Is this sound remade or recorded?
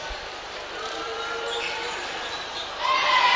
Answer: remade